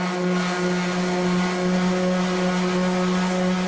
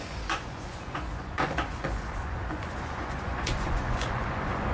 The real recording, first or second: first